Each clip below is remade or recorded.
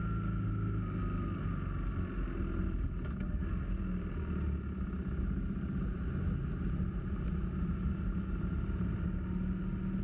recorded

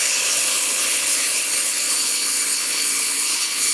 remade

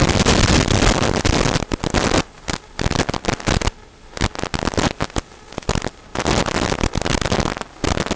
recorded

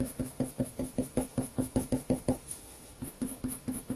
remade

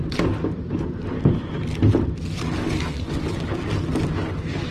recorded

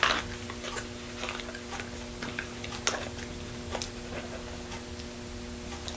recorded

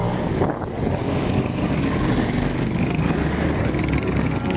remade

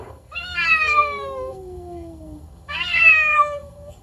remade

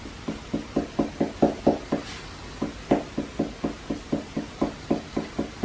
recorded